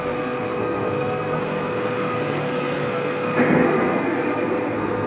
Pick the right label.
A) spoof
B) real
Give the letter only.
A